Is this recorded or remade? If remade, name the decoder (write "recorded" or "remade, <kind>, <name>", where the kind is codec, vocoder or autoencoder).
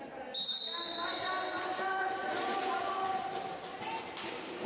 recorded